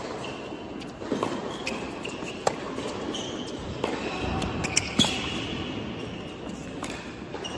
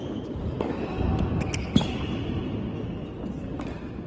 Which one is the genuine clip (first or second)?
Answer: second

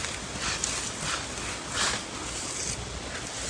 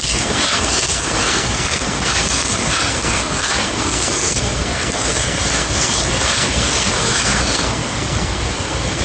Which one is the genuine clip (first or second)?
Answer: first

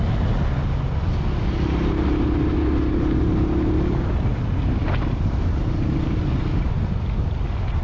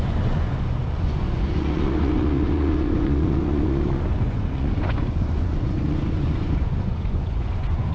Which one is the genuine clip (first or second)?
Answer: first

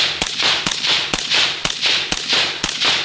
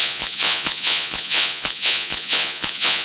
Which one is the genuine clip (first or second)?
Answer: first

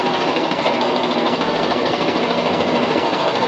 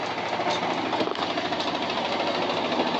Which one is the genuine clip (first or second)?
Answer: second